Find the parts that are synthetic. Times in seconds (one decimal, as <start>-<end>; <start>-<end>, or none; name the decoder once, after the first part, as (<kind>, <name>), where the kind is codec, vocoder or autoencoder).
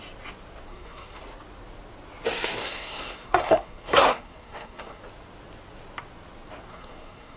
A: 0.7-1.2 (codec, SNAC); 2.6-5.0; 6.7-7.4